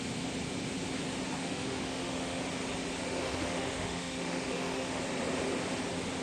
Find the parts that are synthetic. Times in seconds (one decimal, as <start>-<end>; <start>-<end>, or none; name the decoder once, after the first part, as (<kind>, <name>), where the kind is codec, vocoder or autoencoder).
1.4-2.4 (autoencoder, DAC-VAE); 3.0-5.0